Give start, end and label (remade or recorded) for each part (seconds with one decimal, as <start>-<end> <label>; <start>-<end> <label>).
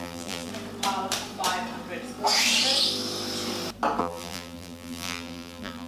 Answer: 0.0-0.5 remade; 0.5-4.0 recorded; 4.0-5.9 remade